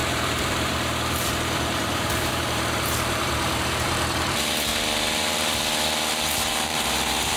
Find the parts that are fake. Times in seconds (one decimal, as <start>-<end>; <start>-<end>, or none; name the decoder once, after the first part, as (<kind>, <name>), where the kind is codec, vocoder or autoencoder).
0.0-4.7 (vocoder, BigVGAN v2); 6.1-7.4